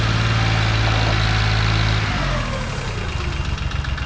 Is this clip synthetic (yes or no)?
no